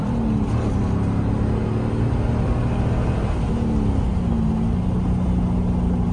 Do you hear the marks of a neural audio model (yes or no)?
no